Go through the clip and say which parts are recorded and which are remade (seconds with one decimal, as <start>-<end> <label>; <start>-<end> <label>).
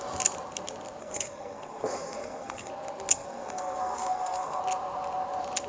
0.0-1.0 recorded; 1.0-2.7 remade; 2.7-3.1 recorded; 3.1-4.6 remade; 4.6-5.7 recorded